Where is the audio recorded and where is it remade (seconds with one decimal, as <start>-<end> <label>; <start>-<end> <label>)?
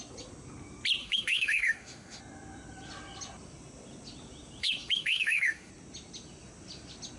0.0-1.0 recorded; 1.0-2.2 remade; 2.2-4.6 recorded; 4.6-5.7 remade; 5.7-7.2 recorded